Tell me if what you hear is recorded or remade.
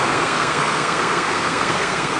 remade